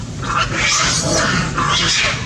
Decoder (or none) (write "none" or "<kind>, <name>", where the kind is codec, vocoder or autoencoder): none